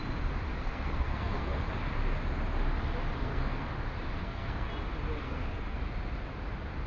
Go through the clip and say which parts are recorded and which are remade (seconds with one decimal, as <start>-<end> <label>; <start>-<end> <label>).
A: 0.0-0.5 recorded; 0.5-1.6 remade; 1.6-3.2 recorded; 3.2-3.7 remade; 3.7-4.2 recorded; 4.2-4.7 remade; 4.7-5.2 recorded; 5.2-5.8 remade; 5.8-6.9 recorded